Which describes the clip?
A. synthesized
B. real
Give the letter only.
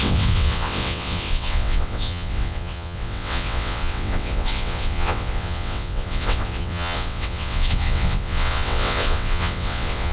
A